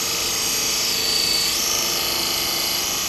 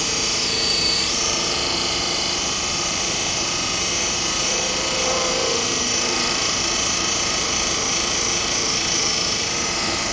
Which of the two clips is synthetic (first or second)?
second